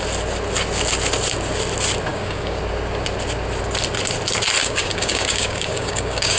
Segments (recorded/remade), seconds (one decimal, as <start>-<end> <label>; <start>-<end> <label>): 0.0-2.1 recorded; 2.1-2.6 remade; 2.6-4.6 recorded; 4.6-6.4 remade